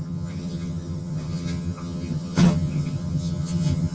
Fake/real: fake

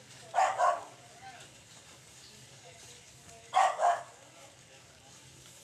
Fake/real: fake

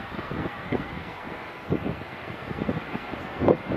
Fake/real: fake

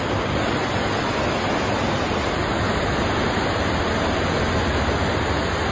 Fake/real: real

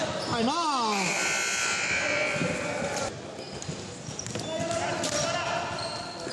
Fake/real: real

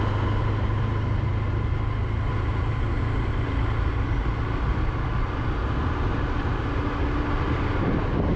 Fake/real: real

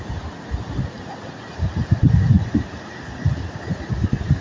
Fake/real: real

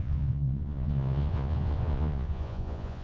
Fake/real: fake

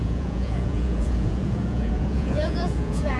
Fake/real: fake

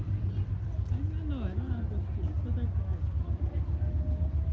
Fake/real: real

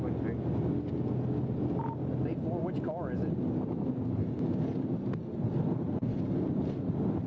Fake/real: real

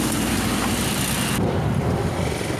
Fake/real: real